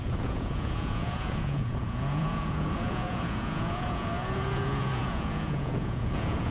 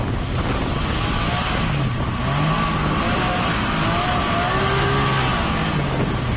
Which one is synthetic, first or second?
first